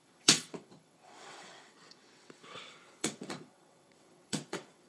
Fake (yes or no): yes